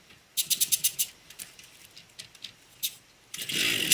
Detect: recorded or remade recorded